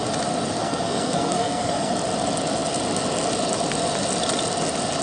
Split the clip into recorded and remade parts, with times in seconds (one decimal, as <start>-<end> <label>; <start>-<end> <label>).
0.0-0.6 recorded; 0.6-1.9 remade; 1.9-5.0 recorded